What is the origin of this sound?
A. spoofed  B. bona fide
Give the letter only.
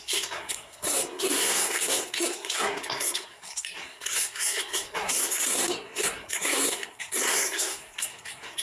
A